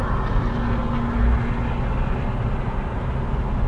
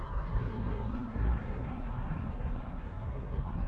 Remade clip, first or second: second